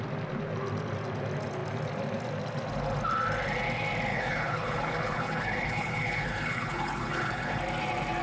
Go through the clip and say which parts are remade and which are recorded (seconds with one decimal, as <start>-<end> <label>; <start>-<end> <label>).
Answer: 0.0-4.1 recorded; 4.1-7.6 remade; 7.6-8.2 recorded